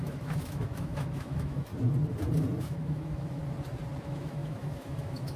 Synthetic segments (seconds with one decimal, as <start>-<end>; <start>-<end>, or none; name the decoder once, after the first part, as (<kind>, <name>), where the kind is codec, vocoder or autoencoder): 0.0-1.7 (autoencoder, DAC-VAE); 2.6-3.4; 4.0-5.4